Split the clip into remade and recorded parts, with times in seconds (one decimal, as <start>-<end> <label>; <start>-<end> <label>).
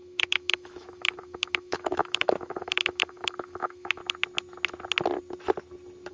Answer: 0.0-4.0 remade; 4.0-6.1 recorded